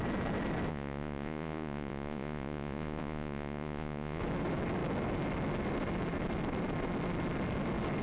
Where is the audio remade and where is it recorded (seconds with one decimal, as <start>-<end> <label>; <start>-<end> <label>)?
0.0-0.7 recorded; 0.7-4.2 remade; 4.2-8.0 recorded